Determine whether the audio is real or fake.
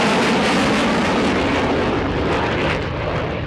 real